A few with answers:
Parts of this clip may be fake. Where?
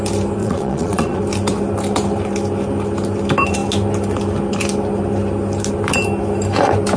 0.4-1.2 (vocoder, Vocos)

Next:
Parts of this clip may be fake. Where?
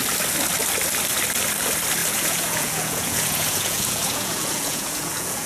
2.0-5.5 (vocoder, Vocos)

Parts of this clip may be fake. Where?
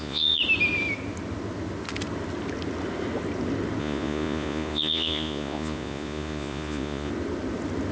0.0-0.4 (vocoder, Vocos); 3.8-7.1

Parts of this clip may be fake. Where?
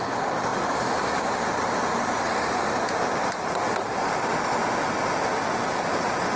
none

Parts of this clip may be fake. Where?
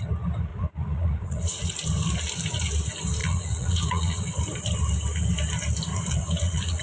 0.5-1.7 (vocoder, Vocos); 3.2-4.4; 5.9-6.8